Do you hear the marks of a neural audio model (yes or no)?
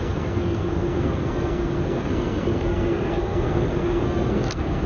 yes